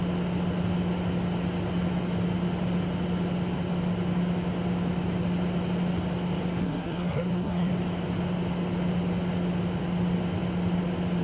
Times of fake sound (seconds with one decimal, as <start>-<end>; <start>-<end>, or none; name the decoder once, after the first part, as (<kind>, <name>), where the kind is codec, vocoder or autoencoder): 6.6-7.7 (codec, SNAC)